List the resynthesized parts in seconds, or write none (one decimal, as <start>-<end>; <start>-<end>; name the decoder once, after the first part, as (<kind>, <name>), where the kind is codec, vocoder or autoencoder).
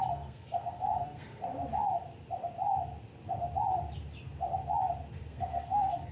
0.0-1.5 (codec, SNAC); 5.2-6.1